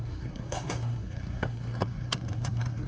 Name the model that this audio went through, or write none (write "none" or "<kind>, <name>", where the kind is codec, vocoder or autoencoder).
codec, SNAC